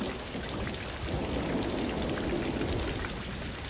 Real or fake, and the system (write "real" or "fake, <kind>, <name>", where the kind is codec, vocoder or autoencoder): real